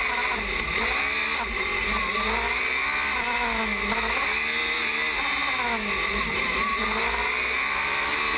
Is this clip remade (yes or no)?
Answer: no